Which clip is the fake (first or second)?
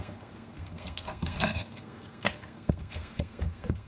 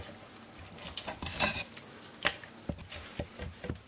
first